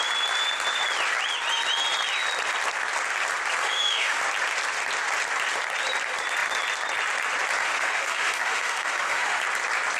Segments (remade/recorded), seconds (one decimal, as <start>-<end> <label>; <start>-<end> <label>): 0.0-3.6 recorded; 3.6-4.2 remade; 4.2-7.6 recorded; 7.6-9.4 remade; 9.4-10.0 recorded